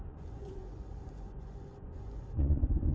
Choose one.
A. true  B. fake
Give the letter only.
B